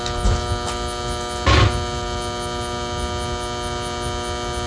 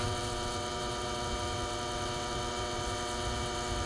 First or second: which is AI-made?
second